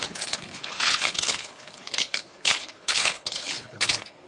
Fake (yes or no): yes